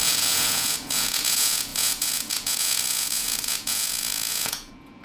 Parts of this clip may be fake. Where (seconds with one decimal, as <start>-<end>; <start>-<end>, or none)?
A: 0.0-5.0

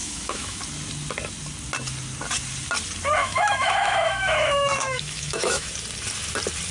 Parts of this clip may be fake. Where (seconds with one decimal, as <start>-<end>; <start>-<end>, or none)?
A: 0.0-0.6; 3.2-5.7

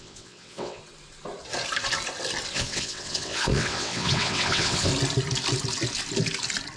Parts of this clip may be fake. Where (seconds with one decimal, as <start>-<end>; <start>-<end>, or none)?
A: 0.0-0.8; 2.5-4.9

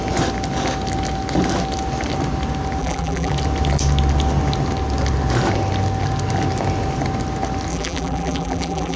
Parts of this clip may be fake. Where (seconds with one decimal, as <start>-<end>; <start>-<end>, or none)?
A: 2.8-3.3; 7.7-9.0

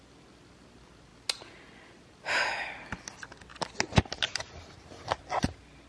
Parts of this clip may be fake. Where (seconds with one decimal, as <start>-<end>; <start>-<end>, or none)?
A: none

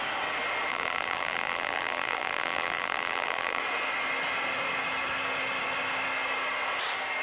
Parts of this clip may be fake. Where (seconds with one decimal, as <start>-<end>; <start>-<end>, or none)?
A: 0.7-3.6

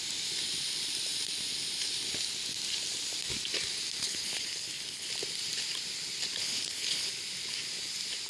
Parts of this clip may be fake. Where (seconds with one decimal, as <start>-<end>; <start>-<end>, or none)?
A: 4.0-5.1; 6.4-7.1

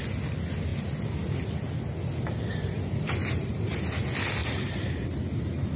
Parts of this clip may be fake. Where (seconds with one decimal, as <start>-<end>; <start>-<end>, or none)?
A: 3.2-3.8; 4.4-5.8